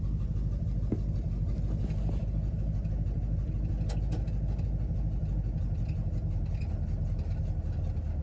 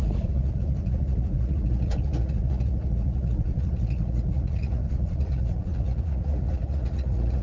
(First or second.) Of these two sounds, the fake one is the second